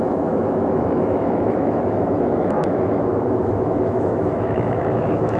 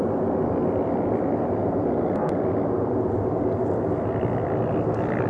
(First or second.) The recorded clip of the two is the second